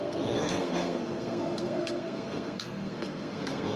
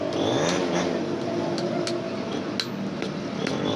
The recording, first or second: second